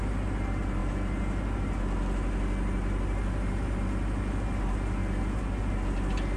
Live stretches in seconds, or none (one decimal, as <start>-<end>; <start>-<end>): 0.0-6.4